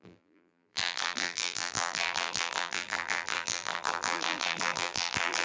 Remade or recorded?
remade